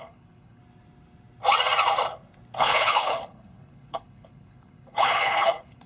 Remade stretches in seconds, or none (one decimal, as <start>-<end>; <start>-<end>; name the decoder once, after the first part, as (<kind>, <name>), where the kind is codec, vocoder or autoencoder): 0.0-0.6 (codec, HILCodec); 2.6-5.9